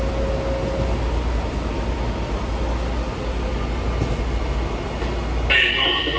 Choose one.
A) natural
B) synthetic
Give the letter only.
A